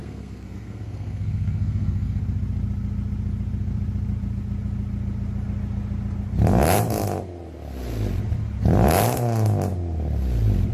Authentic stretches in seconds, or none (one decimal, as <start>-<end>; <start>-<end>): 2.2-10.7